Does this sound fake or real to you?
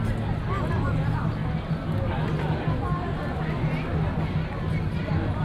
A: real